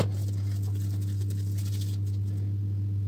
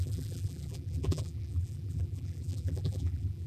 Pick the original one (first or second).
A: first